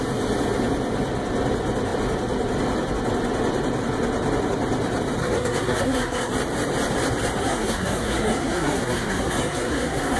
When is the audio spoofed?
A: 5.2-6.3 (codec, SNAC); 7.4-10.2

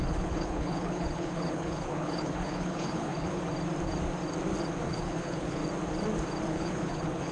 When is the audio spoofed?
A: 0.0-3.5 (codec, HILCodec); 4.9-5.6; 6.5-7.3

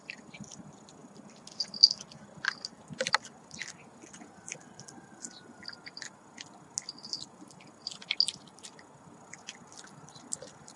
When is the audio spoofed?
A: none

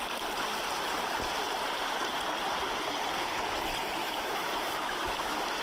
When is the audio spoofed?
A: 4.0-5.6 (autoencoder, DAC-VAE)

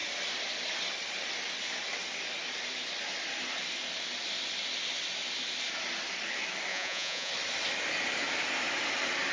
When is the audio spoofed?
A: 6.7-7.3 (vocoder, Vocos)